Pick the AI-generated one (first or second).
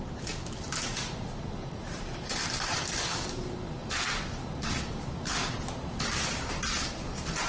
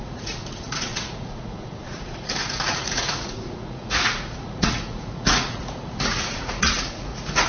second